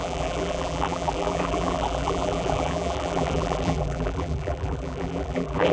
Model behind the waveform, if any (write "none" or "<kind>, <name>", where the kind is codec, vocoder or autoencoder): vocoder, BigVGAN v2